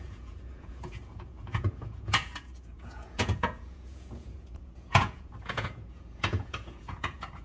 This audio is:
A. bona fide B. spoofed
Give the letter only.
B